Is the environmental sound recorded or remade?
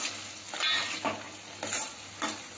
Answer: recorded